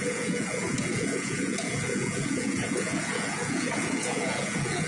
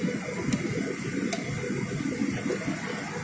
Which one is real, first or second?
second